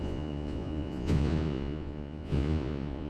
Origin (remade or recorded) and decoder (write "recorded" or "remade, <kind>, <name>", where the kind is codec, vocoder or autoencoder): remade, vocoder, Vocos